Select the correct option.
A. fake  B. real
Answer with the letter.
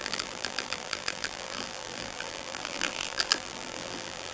A